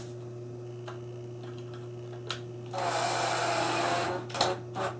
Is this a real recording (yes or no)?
yes